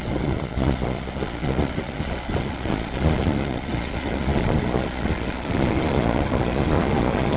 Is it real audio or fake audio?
fake